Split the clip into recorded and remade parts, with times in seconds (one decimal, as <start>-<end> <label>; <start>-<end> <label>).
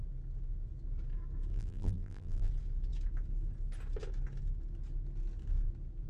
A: 0.0-1.5 recorded; 1.5-2.5 remade; 2.5-6.1 recorded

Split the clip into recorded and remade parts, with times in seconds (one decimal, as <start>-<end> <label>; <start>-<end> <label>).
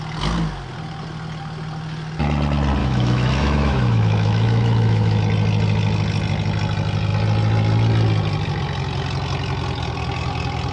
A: 0.0-2.8 recorded; 2.8-5.2 remade; 5.2-10.7 recorded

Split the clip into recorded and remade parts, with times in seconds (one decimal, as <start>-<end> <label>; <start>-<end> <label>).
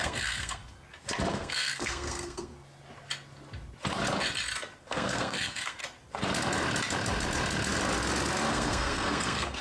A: 0.0-0.6 remade; 0.6-1.3 recorded; 1.3-2.5 remade; 2.5-4.8 recorded; 4.8-5.8 remade; 5.8-8.5 recorded; 8.5-9.6 remade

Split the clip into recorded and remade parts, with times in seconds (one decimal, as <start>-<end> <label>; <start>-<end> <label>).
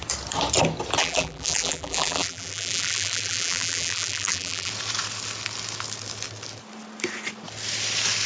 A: 0.0-1.0 recorded; 1.0-4.7 remade; 4.7-8.3 recorded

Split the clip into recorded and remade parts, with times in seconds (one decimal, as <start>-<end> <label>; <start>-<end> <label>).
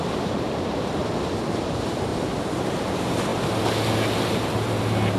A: 0.0-1.0 remade; 1.0-1.6 recorded; 1.6-2.1 remade; 2.1-2.7 recorded; 2.7-3.3 remade; 3.3-4.6 recorded; 4.6-5.2 remade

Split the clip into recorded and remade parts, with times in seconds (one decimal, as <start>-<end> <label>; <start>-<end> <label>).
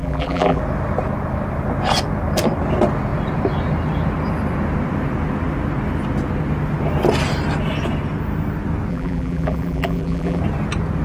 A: 0.0-0.6 remade; 0.6-8.9 recorded; 8.9-10.4 remade; 10.4-11.0 recorded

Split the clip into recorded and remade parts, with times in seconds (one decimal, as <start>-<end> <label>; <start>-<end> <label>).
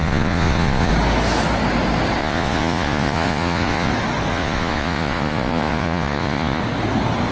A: 0.0-0.9 remade; 0.9-2.2 recorded; 2.2-3.9 remade; 3.9-4.3 recorded; 4.3-6.6 remade; 6.6-7.3 recorded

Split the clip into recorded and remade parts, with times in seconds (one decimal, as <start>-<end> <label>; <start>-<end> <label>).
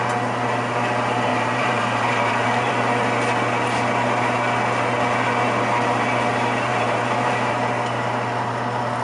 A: 0.0-1.3 recorded; 1.3-2.7 remade; 2.7-6.7 recorded; 6.7-7.5 remade; 7.5-9.0 recorded